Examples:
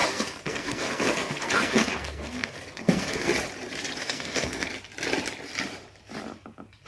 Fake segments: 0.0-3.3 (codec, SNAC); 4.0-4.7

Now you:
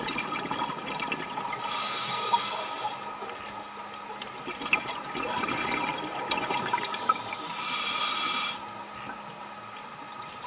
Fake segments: 1.8-2.6 (codec, SNAC)

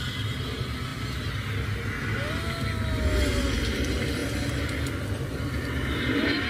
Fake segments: none

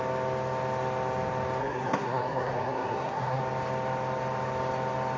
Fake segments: 1.6-3.4 (codec, SNAC)

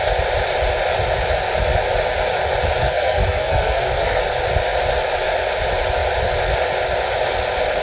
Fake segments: 2.8-4.2 (codec, SNAC)